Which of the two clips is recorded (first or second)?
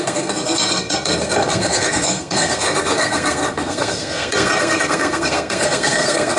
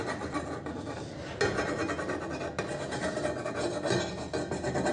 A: second